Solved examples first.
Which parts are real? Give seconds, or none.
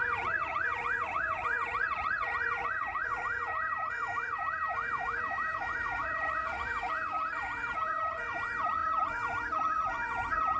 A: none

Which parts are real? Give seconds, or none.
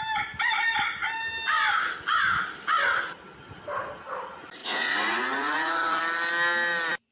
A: 0.0-4.6; 6.0-7.1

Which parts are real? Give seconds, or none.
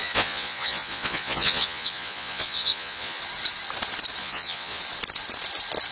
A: 3.2-4.2; 4.8-5.9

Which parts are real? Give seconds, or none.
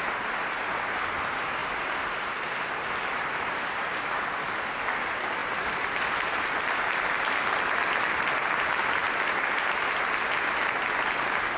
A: 0.0-11.6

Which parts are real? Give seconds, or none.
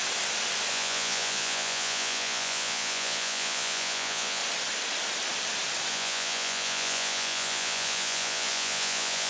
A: 0.0-0.7; 4.4-5.9